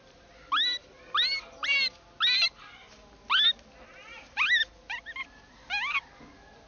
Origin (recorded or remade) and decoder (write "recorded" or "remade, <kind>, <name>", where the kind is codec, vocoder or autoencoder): recorded